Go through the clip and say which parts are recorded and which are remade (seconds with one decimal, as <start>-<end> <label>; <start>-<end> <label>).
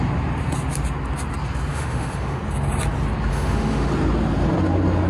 0.0-1.7 recorded; 1.7-2.4 remade; 2.4-3.3 recorded; 3.3-3.9 remade; 3.9-5.1 recorded